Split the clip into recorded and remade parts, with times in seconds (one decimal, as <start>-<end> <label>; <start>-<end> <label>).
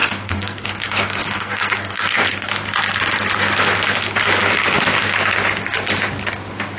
0.0-2.5 remade; 2.5-6.8 recorded